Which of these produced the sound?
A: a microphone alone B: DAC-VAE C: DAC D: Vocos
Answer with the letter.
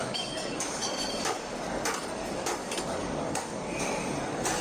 C